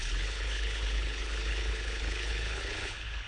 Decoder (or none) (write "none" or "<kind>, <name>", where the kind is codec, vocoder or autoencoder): codec, HILCodec